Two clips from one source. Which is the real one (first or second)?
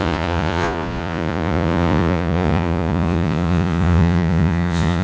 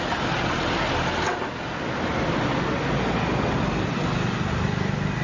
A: second